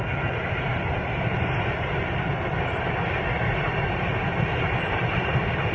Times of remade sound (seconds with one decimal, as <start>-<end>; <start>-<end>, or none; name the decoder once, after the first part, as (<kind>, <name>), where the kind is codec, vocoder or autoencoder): none